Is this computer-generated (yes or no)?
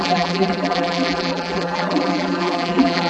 yes